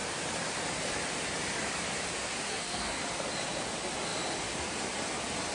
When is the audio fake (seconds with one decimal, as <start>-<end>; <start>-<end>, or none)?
2.5-3.0